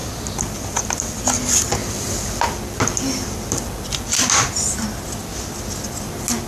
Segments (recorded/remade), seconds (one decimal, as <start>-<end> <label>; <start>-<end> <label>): 0.0-1.8 recorded; 1.8-4.1 remade; 4.1-6.5 recorded